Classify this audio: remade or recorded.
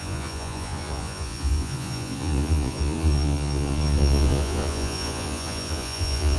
remade